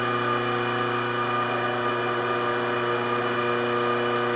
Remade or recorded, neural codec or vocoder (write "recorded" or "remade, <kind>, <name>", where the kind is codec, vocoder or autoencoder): recorded